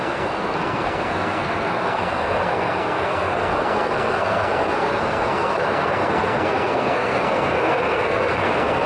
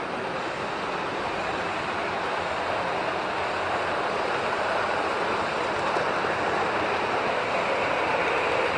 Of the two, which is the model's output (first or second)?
first